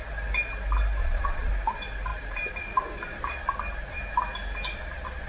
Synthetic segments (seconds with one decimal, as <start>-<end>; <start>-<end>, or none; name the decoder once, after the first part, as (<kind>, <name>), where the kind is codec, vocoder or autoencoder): 1.0-1.5 (vocoder, Vocos)